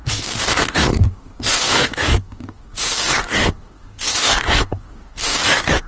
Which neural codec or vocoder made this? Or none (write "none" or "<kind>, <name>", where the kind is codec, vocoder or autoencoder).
codec, DAC